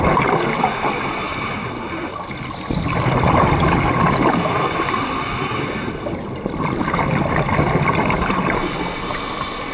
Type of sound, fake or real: real